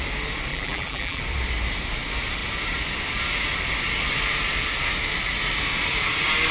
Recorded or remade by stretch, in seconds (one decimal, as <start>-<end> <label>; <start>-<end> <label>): 0.0-0.5 recorded; 0.5-1.2 remade; 1.2-6.5 recorded